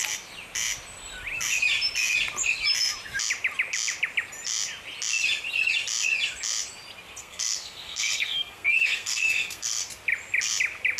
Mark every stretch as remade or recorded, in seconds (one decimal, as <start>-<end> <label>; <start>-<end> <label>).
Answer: 0.0-7.2 recorded; 7.2-9.9 remade; 9.9-11.0 recorded